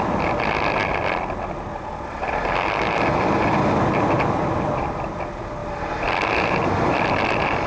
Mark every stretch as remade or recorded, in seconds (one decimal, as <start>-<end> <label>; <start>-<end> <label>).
0.0-7.7 recorded